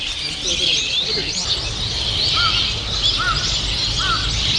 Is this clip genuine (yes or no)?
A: yes